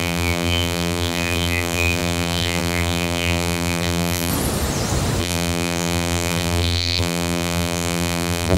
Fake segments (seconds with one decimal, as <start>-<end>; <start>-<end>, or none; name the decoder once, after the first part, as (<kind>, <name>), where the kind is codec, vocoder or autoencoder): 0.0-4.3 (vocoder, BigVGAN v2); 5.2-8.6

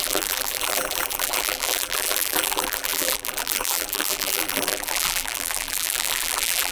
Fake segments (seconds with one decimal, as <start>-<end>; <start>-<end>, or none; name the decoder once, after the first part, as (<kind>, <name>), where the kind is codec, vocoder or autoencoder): 0.0-6.7 (vocoder, BigVGAN v2)

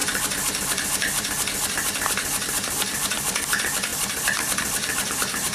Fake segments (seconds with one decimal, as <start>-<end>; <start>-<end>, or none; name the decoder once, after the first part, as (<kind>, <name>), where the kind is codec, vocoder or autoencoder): 0.0-2.5 (vocoder, BigVGAN v2); 3.9-5.1

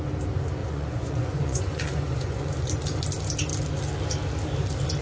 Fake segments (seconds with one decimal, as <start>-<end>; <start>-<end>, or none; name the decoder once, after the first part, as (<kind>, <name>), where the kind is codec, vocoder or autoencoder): 0.6-2.7 (vocoder, Vocos)